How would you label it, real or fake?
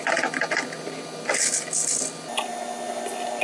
real